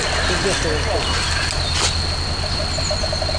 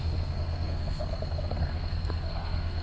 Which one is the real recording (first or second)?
first